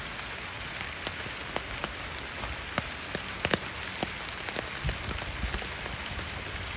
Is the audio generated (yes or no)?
no